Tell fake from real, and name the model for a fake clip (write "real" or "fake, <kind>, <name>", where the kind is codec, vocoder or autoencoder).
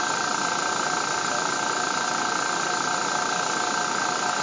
real